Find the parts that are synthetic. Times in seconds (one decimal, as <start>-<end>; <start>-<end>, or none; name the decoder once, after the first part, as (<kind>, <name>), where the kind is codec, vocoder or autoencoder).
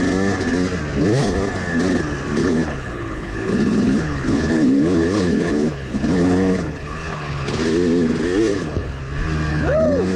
2.4-7.6 (codec, HILCodec); 8.5-9.0; 9.5-10.2